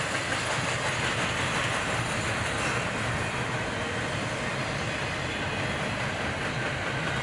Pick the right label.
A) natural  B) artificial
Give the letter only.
A